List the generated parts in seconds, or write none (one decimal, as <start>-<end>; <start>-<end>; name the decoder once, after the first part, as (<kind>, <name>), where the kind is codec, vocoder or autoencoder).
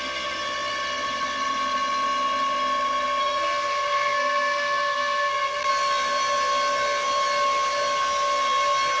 3.2-5.7 (codec, SNAC)